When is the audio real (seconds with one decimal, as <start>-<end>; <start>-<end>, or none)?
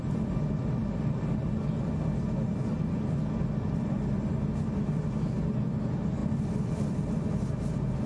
0.0-8.1